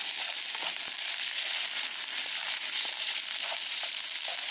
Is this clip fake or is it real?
fake